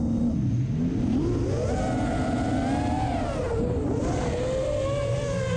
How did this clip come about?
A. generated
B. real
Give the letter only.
B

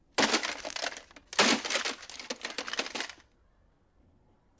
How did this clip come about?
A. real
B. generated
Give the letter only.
A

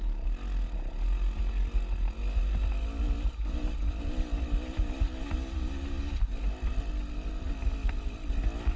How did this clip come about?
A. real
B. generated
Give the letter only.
A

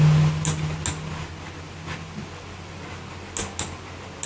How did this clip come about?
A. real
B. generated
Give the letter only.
A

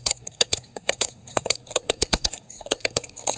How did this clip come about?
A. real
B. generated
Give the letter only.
B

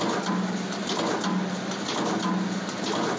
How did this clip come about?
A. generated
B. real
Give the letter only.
B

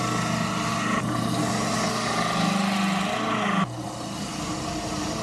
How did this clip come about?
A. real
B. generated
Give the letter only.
A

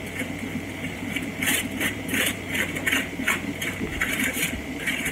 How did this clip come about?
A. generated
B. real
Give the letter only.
A